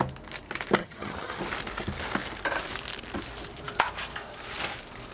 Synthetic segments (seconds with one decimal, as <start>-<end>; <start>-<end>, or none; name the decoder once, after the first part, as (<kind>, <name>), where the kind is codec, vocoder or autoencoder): 0.8-1.4 (vocoder, HiFi-GAN)